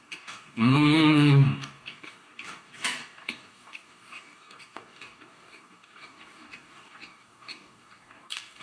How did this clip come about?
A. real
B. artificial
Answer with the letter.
B